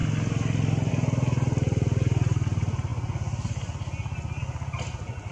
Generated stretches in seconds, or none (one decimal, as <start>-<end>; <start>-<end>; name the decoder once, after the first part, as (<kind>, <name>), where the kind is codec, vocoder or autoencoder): none